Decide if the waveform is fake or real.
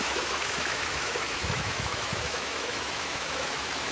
fake